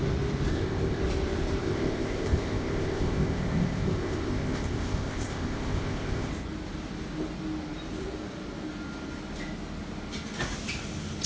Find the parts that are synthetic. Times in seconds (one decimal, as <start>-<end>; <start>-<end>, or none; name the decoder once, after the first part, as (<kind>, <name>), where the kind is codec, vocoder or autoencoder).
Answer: 0.5-1.0 (codec, ZipCodec); 1.6-6.3